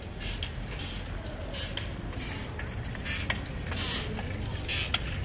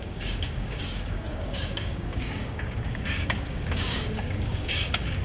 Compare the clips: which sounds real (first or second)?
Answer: first